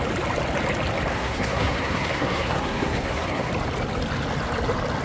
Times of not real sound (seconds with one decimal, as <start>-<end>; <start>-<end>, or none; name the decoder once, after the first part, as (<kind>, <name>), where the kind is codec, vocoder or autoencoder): 1.1-3.5 (codec, SNAC)